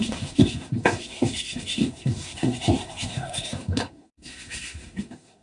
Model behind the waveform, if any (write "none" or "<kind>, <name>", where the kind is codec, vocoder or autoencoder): codec, SNAC